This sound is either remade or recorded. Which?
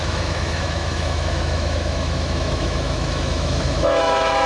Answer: remade